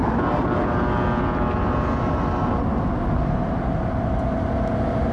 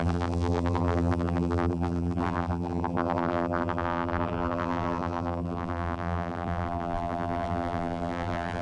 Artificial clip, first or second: second